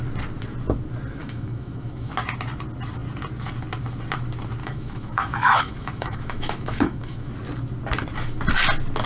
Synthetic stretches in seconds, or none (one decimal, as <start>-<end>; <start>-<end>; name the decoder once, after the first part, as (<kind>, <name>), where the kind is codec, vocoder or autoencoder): 1.2-2.1 (autoencoder, DAC-VAE); 4.6-7.3